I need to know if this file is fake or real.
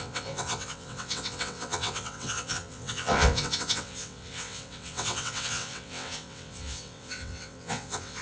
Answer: fake